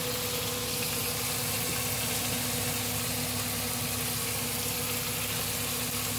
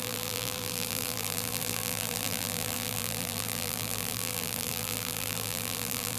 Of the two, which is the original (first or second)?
first